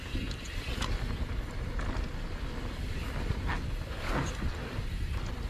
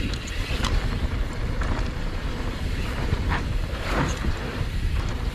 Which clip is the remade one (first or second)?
second